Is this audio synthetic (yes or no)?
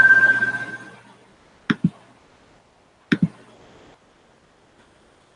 no